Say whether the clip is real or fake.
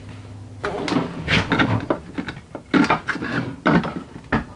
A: real